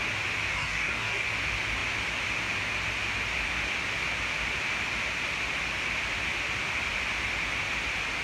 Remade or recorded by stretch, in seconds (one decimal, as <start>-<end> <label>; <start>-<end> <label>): 0.0-0.5 recorded; 0.5-1.3 remade; 1.3-8.2 recorded